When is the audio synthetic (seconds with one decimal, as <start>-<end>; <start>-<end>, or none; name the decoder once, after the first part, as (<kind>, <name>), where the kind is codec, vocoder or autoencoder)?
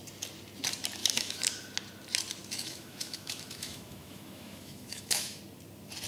1.0-1.5 (autoencoder, DAC-VAE); 2.4-5.4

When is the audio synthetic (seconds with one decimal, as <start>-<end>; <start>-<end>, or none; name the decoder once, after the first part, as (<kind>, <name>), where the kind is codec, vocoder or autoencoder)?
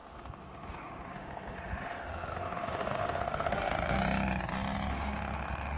0.0-4.0 (autoencoder, DAC-VAE); 4.9-5.8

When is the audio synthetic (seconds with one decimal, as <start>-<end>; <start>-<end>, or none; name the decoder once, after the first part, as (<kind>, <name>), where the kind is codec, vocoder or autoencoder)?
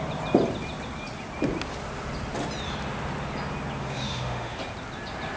3.8-4.6 (autoencoder, DAC-VAE)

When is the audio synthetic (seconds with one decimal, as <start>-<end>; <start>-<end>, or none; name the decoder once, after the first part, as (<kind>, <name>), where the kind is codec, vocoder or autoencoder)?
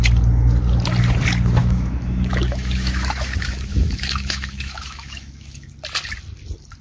1.6-5.7 (autoencoder, DAC-VAE)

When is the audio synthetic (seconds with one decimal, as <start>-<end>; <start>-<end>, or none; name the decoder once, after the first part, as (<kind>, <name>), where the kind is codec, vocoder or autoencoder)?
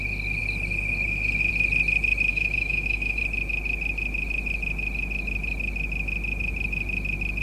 2.3-3.2 (autoencoder, DAC-VAE)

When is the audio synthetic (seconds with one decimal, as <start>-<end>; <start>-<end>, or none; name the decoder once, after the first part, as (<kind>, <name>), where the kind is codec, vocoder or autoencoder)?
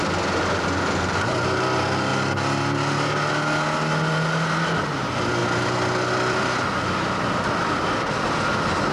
none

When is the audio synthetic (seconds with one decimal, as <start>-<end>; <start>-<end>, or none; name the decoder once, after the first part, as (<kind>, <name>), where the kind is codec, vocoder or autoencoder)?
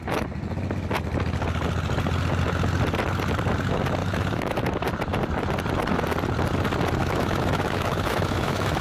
4.0-4.9 (autoencoder, DAC-VAE); 7.0-8.8